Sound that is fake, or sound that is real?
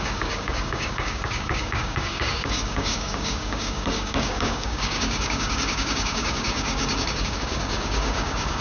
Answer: fake